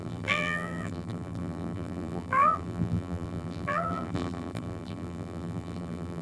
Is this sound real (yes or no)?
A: no